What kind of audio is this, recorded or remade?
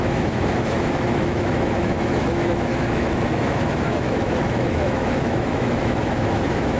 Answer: remade